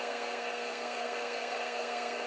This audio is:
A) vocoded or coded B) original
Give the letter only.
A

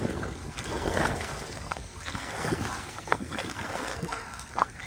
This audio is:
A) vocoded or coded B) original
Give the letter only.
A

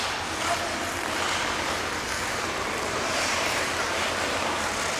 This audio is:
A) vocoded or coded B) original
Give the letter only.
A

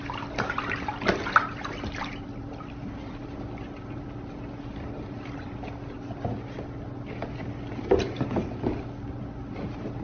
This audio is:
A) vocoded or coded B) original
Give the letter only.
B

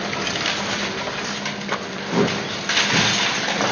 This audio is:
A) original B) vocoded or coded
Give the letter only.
A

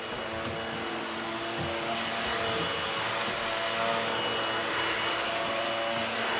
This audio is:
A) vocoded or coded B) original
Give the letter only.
B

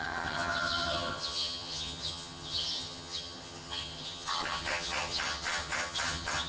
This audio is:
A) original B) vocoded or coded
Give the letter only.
B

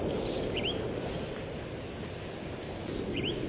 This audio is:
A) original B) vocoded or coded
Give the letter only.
A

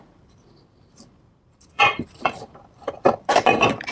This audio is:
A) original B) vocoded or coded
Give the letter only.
B